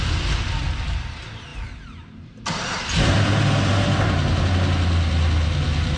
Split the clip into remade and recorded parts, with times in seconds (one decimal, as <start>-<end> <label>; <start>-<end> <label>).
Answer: 0.0-6.0 recorded

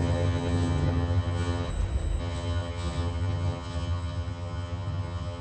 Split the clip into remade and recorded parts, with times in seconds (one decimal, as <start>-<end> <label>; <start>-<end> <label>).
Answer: 0.0-1.7 remade; 1.7-2.2 recorded; 2.2-5.4 remade